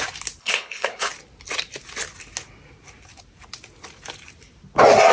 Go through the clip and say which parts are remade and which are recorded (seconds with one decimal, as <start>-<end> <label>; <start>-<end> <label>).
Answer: 0.0-0.4 recorded; 0.4-1.1 remade; 1.1-5.1 recorded